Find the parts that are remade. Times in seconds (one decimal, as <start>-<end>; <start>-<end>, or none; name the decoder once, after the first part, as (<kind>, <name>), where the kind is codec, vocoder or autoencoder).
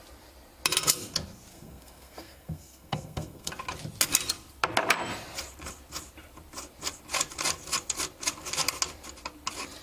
1.5-3.5 (codec, SNAC)